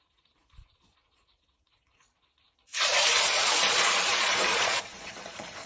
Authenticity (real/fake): fake